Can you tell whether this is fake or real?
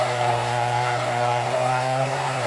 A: fake